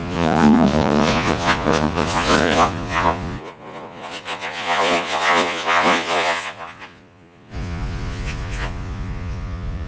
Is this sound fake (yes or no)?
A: yes